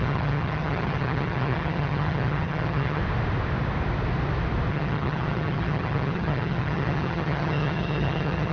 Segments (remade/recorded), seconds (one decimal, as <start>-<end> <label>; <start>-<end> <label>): 0.0-3.0 remade; 3.0-4.7 recorded; 4.7-8.5 remade